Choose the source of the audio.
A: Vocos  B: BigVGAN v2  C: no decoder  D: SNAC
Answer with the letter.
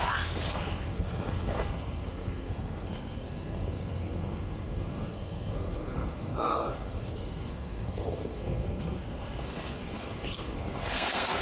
D